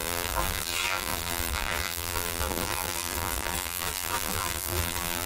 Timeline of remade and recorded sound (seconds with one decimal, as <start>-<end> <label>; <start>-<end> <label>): 0.0-5.3 remade